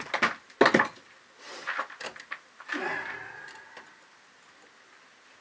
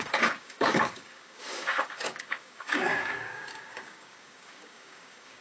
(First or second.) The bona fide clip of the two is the first